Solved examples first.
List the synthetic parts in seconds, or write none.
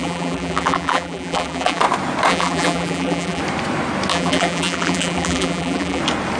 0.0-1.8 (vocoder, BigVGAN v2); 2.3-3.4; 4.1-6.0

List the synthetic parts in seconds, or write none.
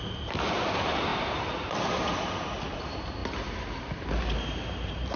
none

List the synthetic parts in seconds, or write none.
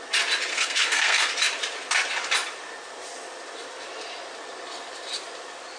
0.5-1.3 (codec, SNAC)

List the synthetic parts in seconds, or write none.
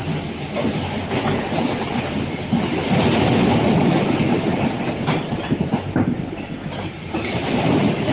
none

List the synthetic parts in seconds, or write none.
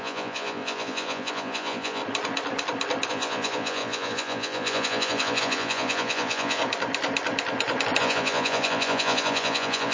0.0-2.0 (vocoder, Vocos); 3.1-6.6; 8.0-9.9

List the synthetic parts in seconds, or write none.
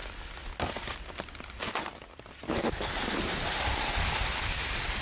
none